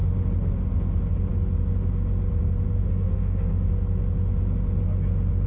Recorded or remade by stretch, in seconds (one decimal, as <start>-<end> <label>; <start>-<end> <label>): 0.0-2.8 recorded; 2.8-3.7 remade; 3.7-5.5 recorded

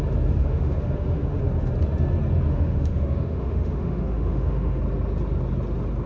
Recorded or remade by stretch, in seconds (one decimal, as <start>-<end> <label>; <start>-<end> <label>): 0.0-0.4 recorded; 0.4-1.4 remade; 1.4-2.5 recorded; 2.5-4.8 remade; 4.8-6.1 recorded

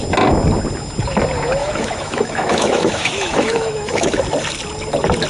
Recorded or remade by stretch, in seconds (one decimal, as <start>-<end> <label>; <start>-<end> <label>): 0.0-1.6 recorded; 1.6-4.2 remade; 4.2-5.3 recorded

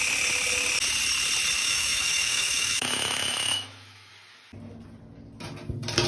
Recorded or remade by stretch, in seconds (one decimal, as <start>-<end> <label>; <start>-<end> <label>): 0.0-1.6 recorded; 1.6-4.1 remade; 4.1-6.1 recorded

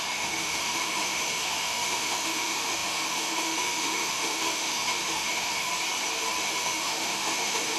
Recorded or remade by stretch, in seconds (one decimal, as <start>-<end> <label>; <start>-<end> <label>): 0.0-5.7 remade; 5.7-6.4 recorded; 6.4-7.8 remade

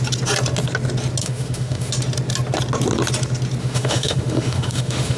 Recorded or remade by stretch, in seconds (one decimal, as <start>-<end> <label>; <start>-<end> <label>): 0.0-1.2 recorded; 1.2-1.9 remade; 1.9-3.6 recorded; 3.6-5.2 remade

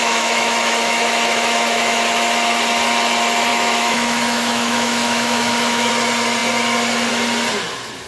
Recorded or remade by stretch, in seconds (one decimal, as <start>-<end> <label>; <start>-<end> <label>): 0.0-2.0 remade; 2.0-3.5 recorded; 3.5-5.9 remade; 5.9-8.1 recorded

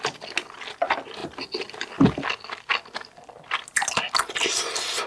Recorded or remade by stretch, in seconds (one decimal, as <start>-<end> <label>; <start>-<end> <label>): 0.0-5.1 recorded